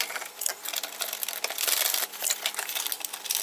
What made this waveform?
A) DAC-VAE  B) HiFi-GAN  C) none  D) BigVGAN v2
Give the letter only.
C